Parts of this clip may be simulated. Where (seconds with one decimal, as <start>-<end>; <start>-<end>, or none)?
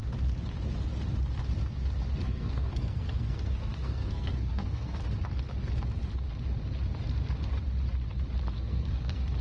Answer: 2.2-5.0; 8.5-9.4